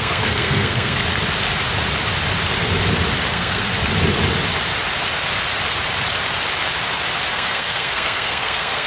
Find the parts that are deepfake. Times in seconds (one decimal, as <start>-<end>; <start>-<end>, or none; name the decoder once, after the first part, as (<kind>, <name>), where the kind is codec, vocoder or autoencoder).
0.0-1.0 (codec, SNAC); 3.3-3.7; 7.3-8.9